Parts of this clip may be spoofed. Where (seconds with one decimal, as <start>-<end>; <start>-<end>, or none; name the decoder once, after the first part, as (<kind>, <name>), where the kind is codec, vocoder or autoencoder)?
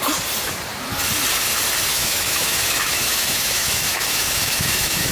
1.9-5.1 (autoencoder, DAC-VAE)